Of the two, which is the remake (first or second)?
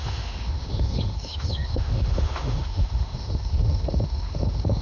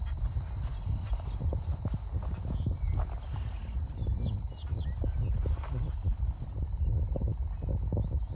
first